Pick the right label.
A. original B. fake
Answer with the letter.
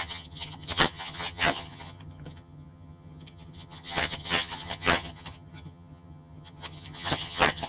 B